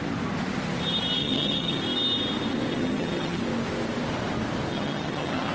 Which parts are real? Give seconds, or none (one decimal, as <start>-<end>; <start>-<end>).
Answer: 0.0-1.2; 1.8-2.7; 3.4-4.7